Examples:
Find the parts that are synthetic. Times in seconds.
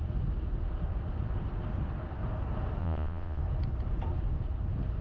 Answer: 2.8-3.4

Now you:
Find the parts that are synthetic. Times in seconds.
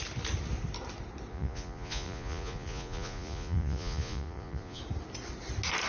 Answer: 1.3-4.8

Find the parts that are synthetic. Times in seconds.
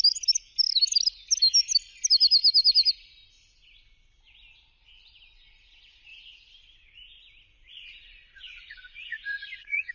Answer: 7.7-9.9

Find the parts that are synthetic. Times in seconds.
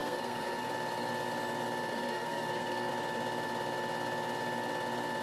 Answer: 0.0-0.7; 1.9-2.9